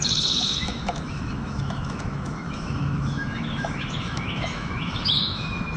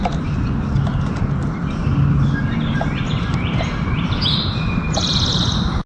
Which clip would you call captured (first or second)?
second